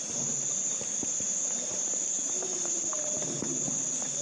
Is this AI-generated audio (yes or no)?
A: yes